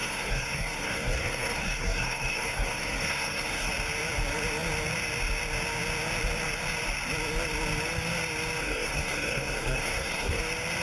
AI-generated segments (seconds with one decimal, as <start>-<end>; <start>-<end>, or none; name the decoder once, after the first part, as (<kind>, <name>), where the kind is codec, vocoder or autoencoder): 0.0-3.7 (codec, SNAC); 8.6-10.4